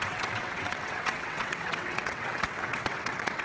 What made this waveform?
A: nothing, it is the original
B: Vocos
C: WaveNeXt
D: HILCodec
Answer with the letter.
C